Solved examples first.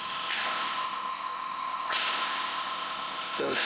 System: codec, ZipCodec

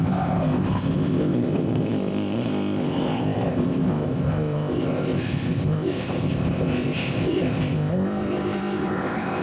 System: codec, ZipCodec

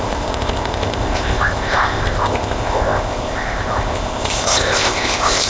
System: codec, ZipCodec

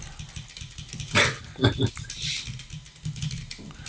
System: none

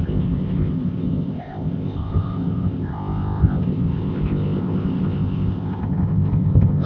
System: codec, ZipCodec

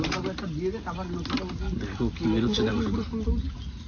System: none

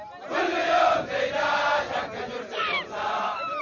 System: none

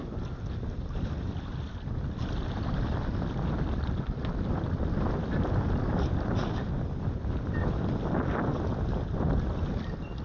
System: none